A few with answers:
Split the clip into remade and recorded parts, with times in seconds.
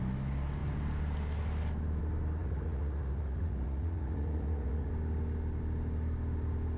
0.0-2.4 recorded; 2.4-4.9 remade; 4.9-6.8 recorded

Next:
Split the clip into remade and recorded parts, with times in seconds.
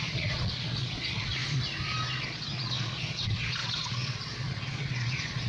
0.0-1.4 remade; 1.4-2.1 recorded; 2.1-5.5 remade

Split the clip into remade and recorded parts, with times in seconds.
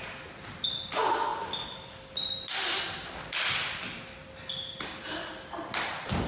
0.0-6.3 recorded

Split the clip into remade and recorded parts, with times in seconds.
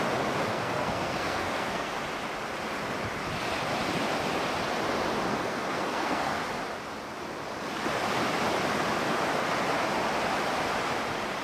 0.0-0.5 recorded; 0.5-2.0 remade; 2.0-5.3 recorded; 5.3-6.4 remade; 6.4-11.4 recorded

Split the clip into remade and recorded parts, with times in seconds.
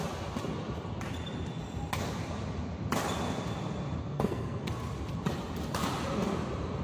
0.0-4.0 recorded; 4.0-4.7 remade; 4.7-6.8 recorded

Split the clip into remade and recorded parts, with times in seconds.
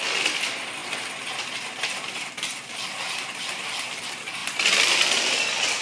0.0-0.8 remade; 0.8-2.2 recorded; 2.2-5.8 remade